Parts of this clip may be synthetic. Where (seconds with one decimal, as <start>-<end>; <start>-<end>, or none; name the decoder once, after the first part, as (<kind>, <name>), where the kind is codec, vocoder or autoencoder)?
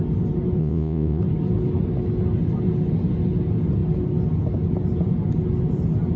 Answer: 0.6-1.2 (vocoder, Vocos)